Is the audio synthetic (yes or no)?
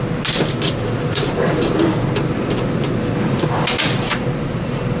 no